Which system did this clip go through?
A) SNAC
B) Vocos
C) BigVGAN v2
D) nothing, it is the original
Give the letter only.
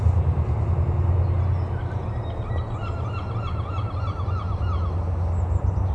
D